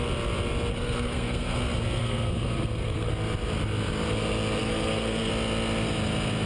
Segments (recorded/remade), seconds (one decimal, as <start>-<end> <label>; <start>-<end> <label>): 0.0-0.7 recorded; 0.7-1.6 remade; 1.6-2.0 recorded; 2.0-3.1 remade; 3.1-4.6 recorded; 4.6-5.3 remade; 5.3-6.5 recorded